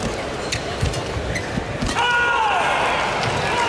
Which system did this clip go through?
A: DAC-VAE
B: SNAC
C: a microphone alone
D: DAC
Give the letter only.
C